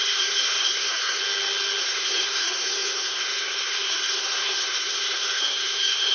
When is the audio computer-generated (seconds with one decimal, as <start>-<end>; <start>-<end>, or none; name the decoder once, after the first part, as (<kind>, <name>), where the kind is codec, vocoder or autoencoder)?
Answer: 0.0-1.2 (codec, SNAC); 1.8-6.1